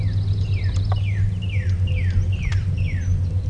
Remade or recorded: recorded